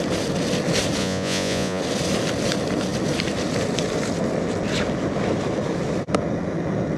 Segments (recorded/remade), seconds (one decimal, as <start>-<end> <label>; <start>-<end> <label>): 0.0-1.0 recorded; 1.0-1.8 remade; 1.8-7.0 recorded